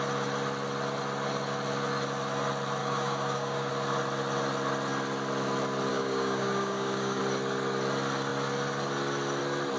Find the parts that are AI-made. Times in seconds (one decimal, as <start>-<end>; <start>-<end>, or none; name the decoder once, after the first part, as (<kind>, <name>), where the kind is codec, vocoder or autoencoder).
2.8-3.7 (codec, DAC); 5.9-7.2

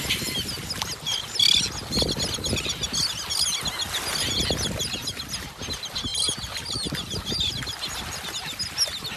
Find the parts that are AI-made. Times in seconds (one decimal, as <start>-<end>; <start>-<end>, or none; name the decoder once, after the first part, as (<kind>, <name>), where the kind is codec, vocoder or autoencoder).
none

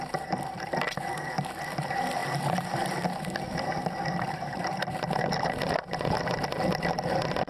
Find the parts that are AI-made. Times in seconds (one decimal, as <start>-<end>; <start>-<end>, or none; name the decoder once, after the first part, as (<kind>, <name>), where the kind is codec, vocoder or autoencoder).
2.2-4.7 (vocoder, BigVGAN v2)